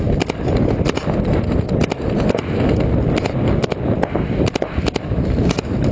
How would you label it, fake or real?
real